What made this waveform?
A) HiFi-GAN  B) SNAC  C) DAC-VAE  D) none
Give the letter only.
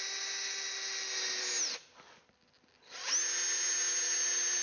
D